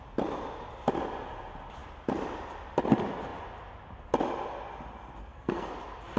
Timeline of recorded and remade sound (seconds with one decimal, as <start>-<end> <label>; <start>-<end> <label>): 0.0-5.2 recorded; 5.2-5.7 remade; 5.7-6.2 recorded